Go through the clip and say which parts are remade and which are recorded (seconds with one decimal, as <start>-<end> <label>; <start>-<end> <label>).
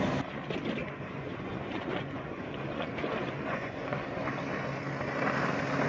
0.0-0.8 recorded; 0.8-4.3 remade; 4.3-5.9 recorded